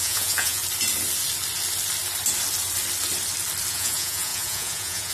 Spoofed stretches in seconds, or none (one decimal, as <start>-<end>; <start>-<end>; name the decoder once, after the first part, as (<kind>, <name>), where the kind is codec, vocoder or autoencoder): 0.0-0.6 (vocoder, Vocos); 3.7-5.1